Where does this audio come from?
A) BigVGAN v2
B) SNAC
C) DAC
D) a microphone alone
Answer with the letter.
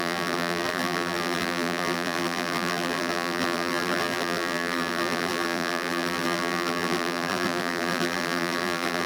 A